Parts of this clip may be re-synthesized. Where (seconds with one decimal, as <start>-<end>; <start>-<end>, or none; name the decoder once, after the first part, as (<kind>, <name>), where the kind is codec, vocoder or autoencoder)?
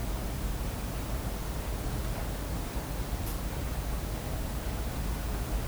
3.4-4.9 (vocoder, BigVGAN v2)